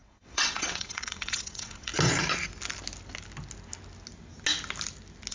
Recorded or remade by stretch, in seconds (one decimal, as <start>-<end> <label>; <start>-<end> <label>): 0.0-1.9 remade; 1.9-5.3 recorded